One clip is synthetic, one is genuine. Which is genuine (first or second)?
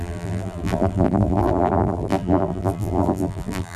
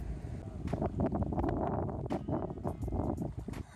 second